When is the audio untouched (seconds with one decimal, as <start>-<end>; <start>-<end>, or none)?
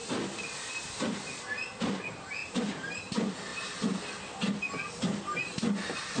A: 0.0-2.4; 3.0-3.5; 4.0-6.2